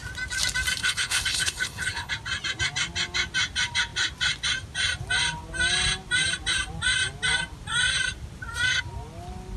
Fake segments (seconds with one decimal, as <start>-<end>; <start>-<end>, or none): 0.8-2.1